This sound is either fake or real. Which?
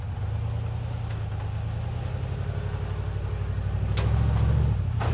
real